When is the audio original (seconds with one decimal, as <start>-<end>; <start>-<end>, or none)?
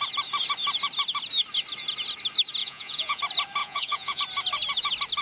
0.0-2.6; 3.2-3.6; 4.2-5.2